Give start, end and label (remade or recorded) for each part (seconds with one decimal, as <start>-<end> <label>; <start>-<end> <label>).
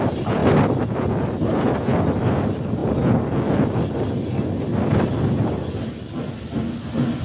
0.0-7.2 recorded